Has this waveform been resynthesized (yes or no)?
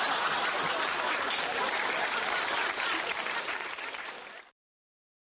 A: no